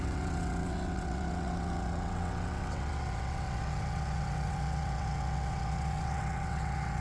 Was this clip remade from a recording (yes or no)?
yes